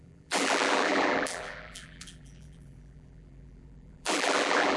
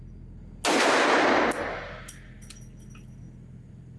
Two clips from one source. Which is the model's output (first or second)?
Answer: first